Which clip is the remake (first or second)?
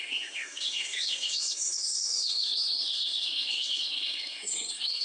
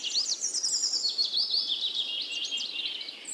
first